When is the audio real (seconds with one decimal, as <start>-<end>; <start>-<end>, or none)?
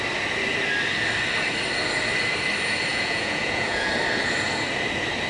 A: 0.0-2.9; 3.9-5.3